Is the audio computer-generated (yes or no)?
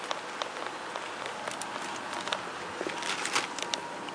no